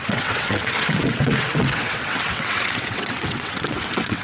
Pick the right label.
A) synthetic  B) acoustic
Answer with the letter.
A